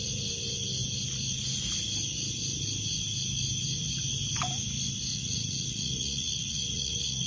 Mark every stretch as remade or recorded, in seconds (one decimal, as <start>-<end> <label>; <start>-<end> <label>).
0.0-5.1 recorded; 5.1-7.3 remade